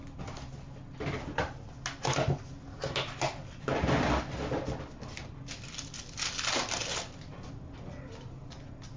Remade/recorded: recorded